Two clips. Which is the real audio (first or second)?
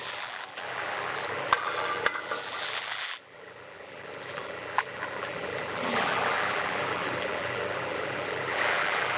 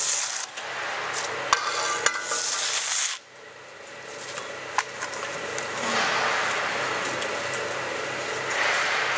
second